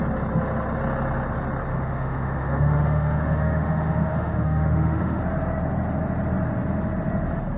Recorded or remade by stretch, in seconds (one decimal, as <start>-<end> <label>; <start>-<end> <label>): 0.0-1.7 recorded; 1.7-5.2 remade; 5.2-7.6 recorded